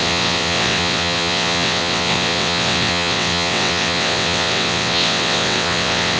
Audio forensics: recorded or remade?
remade